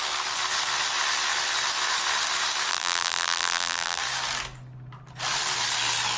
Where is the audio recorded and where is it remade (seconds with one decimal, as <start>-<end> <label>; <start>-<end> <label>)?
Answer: 0.0-2.7 recorded; 2.7-4.0 remade; 4.0-6.2 recorded